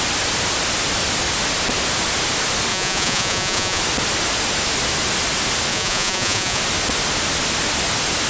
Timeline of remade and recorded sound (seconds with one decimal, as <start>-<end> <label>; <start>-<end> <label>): 0.0-2.7 recorded; 2.7-3.8 remade; 3.8-5.7 recorded; 5.7-6.6 remade; 6.6-8.3 recorded